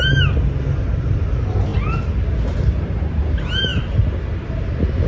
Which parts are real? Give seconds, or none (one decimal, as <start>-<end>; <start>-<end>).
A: 0.0-5.1

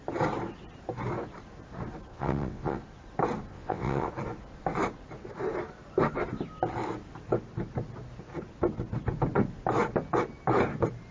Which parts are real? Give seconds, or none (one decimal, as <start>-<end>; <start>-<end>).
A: 0.0-2.1; 2.8-3.5; 4.1-11.1